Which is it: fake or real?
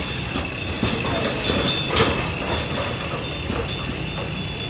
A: real